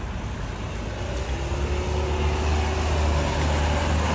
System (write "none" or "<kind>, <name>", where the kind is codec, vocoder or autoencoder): none